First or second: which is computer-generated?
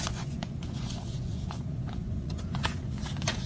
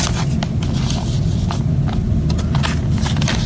first